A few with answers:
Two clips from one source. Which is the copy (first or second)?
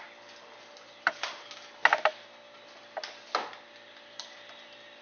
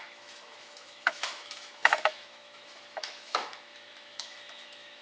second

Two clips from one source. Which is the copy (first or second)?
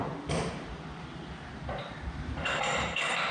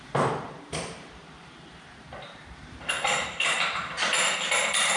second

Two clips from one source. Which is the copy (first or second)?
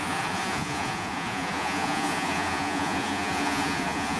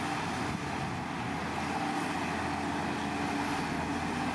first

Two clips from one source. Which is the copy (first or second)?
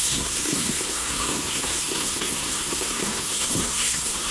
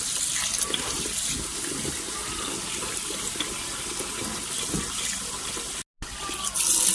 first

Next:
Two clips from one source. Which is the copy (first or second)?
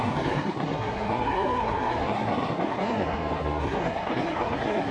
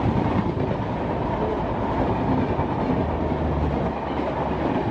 first